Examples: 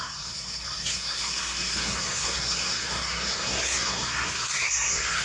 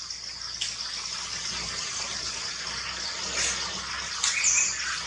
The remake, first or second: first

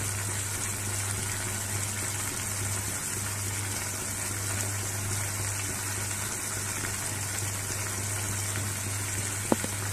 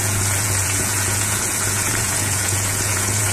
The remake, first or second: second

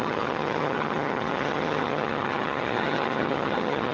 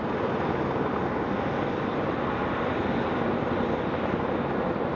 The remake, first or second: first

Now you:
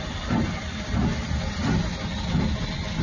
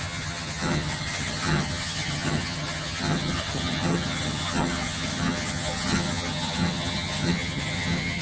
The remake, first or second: second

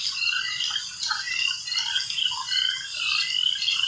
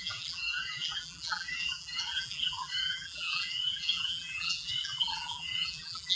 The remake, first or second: second